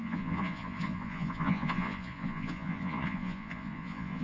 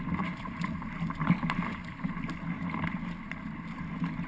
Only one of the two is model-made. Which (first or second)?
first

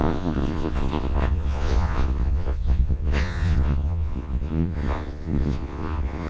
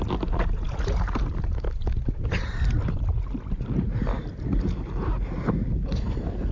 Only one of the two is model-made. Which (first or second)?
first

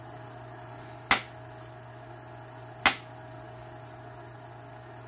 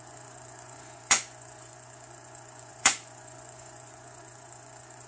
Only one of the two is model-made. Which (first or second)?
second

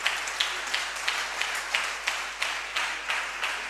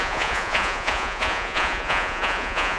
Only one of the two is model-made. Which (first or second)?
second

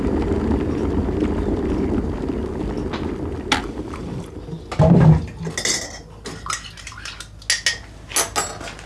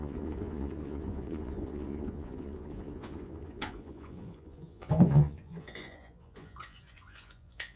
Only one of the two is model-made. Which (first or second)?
second